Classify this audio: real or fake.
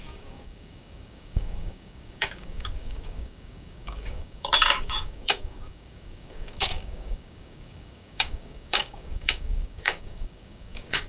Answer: fake